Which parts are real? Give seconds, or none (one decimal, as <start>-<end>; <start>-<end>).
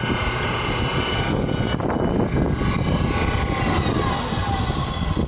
0.0-5.3